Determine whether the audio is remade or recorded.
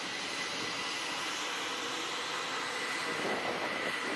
recorded